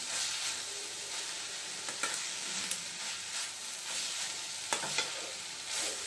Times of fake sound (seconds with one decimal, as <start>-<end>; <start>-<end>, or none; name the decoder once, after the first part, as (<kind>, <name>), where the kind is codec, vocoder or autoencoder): 2.1-2.7 (codec, DAC)